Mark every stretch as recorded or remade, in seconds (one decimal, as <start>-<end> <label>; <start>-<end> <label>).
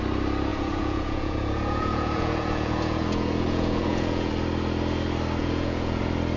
0.0-0.5 recorded; 0.5-4.3 remade; 4.3-5.4 recorded; 5.4-6.0 remade; 6.0-6.4 recorded